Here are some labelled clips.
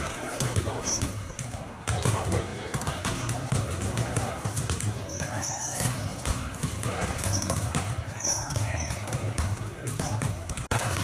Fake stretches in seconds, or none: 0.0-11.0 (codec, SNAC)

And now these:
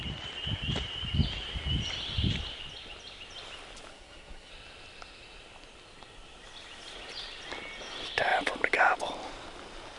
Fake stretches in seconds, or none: 3.9-4.5 (codec, SNAC)

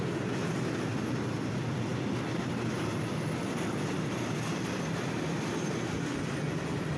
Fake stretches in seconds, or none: none

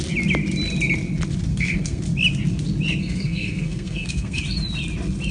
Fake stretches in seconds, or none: 1.5-2.0 (codec, SNAC); 3.0-4.4

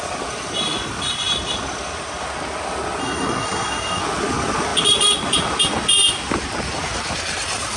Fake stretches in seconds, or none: 3.0-4.0 (codec, SNAC)

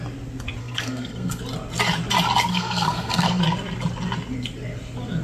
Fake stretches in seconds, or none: 0.6-1.4 (codec, SNAC); 2.5-3.4

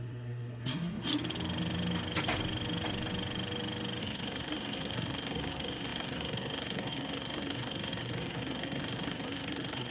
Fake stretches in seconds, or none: 0.0-1.1 (codec, SNAC); 4.0-9.9